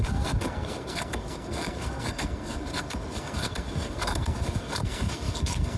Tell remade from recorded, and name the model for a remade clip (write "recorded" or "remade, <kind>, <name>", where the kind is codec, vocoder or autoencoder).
remade, codec, SNAC